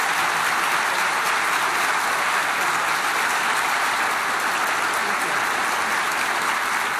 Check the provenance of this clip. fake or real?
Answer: real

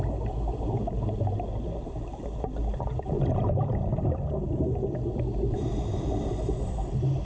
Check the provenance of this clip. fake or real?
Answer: real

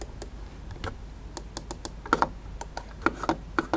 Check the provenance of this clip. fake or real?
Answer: real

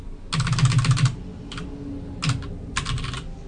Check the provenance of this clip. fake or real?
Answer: real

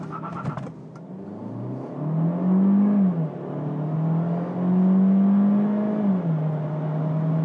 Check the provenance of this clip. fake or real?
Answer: real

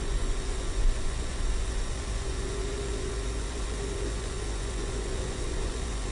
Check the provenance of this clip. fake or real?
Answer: fake